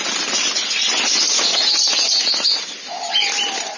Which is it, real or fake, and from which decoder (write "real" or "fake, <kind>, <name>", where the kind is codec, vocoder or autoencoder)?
real